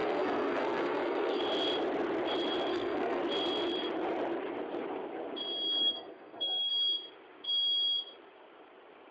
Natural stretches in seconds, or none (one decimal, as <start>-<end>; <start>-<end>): 1.4-2.7; 3.2-5.8; 6.7-9.1